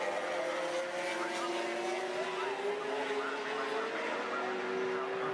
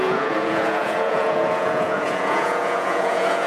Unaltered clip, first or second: first